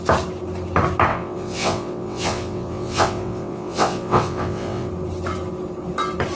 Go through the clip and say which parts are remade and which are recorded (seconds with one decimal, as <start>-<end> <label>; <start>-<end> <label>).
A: 0.0-1.1 recorded; 1.1-4.9 remade; 4.9-6.4 recorded